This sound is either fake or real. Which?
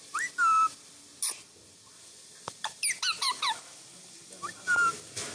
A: real